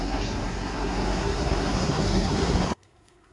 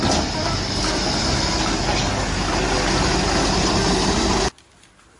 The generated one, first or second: first